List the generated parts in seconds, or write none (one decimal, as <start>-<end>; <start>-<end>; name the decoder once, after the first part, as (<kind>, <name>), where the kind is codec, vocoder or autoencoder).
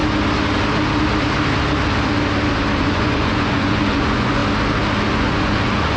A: 2.8-4.4 (vocoder, Vocos); 5.1-6.0